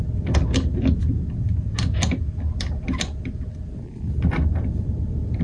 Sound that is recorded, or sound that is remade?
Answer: recorded